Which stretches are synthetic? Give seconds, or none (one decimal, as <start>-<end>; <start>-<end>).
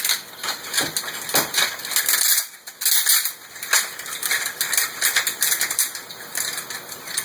none